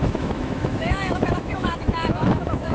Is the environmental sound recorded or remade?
remade